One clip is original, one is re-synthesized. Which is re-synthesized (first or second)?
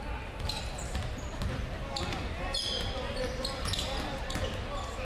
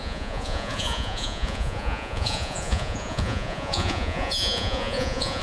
second